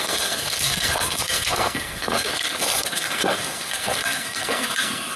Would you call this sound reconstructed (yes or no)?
yes